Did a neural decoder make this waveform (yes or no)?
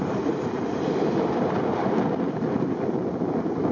no